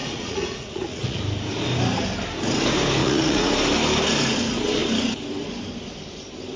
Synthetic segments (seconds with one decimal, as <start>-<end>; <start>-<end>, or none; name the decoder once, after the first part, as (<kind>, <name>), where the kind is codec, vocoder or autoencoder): 0.0-1.2 (vocoder, Vocos); 3.0-3.5